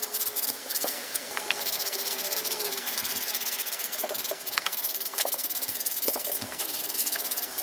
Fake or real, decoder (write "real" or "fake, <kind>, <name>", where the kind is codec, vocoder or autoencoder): fake, codec, SNAC